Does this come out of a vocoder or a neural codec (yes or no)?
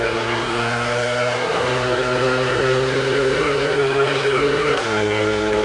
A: yes